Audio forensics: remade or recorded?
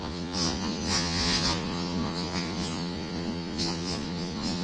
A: remade